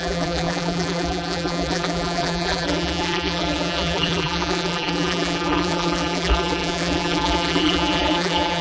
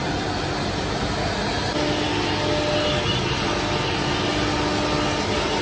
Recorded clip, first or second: second